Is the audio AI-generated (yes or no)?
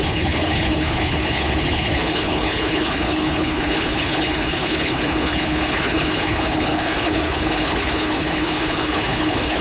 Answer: yes